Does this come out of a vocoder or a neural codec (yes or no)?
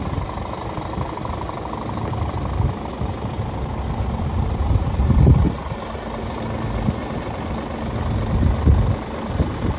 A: no